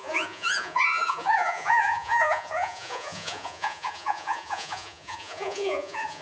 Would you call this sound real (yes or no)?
no